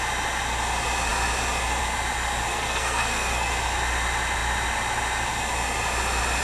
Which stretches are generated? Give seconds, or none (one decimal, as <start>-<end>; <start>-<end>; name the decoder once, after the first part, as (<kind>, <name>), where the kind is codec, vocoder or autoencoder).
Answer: 2.5-3.5 (codec, SNAC)